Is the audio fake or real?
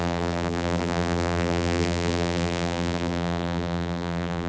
fake